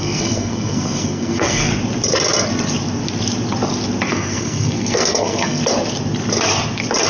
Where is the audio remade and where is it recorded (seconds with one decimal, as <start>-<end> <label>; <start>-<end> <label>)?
0.0-1.7 remade; 1.7-4.1 recorded; 4.1-5.6 remade; 5.6-7.1 recorded